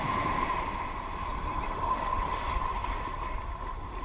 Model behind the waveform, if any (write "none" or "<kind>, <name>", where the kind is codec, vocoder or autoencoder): none